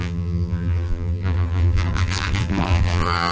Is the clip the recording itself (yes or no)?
no